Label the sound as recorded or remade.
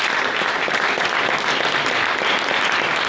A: recorded